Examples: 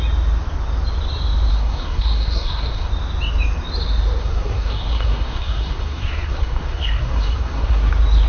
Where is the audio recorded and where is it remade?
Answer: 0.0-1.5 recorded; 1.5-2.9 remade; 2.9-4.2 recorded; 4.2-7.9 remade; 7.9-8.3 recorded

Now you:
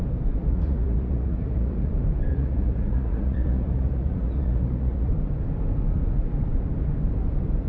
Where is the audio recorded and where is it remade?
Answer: 0.0-0.4 recorded; 0.4-1.9 remade; 1.9-2.3 recorded; 2.3-5.1 remade; 5.1-7.7 recorded